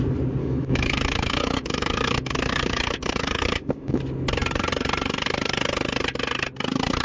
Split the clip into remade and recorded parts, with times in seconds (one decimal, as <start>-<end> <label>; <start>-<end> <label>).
0.0-0.4 recorded; 0.4-4.0 remade; 4.0-7.0 recorded